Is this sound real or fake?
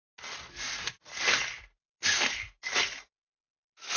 real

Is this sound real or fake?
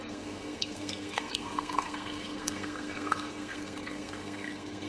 fake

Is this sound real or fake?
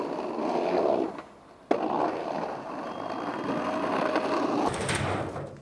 real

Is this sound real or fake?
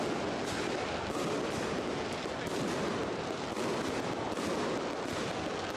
real